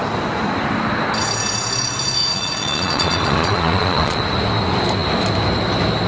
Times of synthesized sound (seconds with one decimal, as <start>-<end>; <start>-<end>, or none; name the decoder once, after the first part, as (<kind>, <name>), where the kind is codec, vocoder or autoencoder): 2.3-4.2 (vocoder, Vocos)